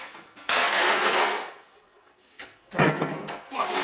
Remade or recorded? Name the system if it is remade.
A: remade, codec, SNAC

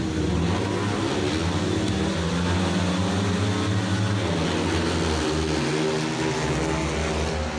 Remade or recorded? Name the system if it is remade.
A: recorded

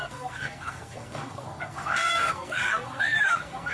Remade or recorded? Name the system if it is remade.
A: remade, codec, SNAC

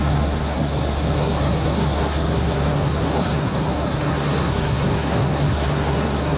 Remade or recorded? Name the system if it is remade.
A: remade, codec, SNAC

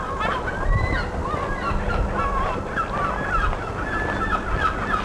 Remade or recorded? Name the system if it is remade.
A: recorded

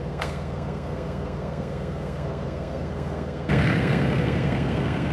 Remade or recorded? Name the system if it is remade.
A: remade, codec, SNAC